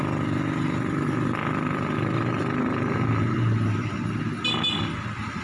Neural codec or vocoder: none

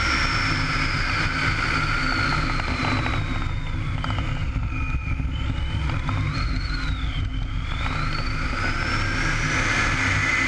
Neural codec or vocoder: none